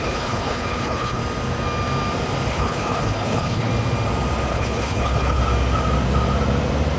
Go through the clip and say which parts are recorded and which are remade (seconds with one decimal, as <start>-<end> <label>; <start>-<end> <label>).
0.0-1.2 remade; 1.2-2.5 recorded; 2.5-3.7 remade; 3.7-4.5 recorded; 4.5-5.4 remade; 5.4-7.0 recorded